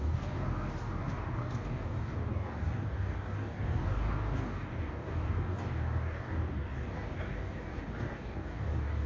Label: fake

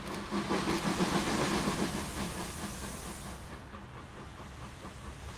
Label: real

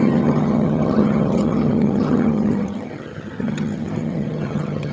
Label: fake